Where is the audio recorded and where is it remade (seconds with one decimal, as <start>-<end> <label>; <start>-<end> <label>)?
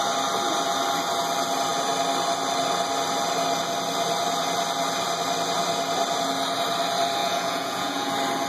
0.0-7.2 recorded; 7.2-8.1 remade; 8.1-8.5 recorded